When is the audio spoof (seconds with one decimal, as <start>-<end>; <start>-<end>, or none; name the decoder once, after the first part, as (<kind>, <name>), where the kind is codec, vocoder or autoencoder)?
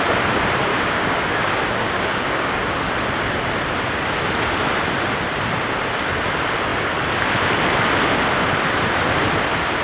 0.7-2.7 (codec, DAC)